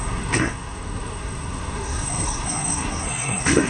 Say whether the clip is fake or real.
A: fake